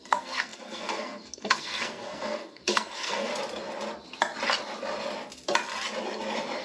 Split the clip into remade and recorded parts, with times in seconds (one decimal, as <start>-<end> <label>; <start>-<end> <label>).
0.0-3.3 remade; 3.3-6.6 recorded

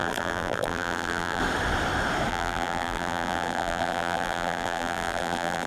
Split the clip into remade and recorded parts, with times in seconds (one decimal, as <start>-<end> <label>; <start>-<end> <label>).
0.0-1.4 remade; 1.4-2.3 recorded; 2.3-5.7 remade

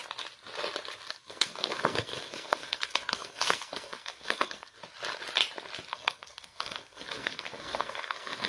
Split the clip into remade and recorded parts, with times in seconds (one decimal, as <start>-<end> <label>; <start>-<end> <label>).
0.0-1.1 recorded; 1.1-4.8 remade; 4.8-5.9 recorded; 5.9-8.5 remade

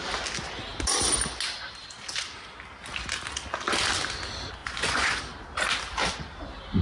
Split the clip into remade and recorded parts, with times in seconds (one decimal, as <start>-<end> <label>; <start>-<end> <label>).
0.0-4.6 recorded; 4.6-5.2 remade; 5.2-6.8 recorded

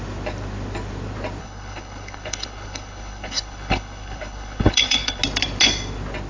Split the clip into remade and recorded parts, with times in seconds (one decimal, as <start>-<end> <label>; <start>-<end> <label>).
0.0-1.4 recorded; 1.4-5.2 remade; 5.2-6.3 recorded

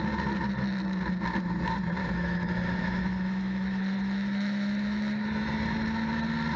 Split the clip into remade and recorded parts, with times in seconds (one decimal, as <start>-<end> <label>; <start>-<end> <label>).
0.0-2.0 recorded; 2.0-5.5 remade; 5.5-6.6 recorded

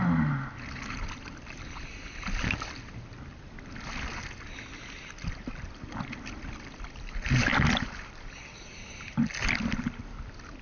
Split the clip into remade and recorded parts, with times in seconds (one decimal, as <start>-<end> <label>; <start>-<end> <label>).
0.0-10.6 recorded

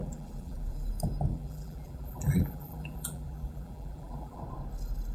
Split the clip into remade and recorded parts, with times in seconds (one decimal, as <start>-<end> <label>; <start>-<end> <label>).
0.0-0.9 remade; 0.9-1.3 recorded; 1.3-4.4 remade; 4.4-5.1 recorded